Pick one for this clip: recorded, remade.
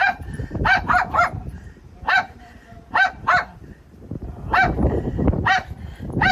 remade